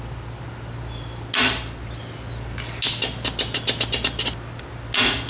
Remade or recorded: recorded